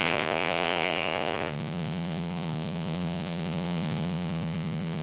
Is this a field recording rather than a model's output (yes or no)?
no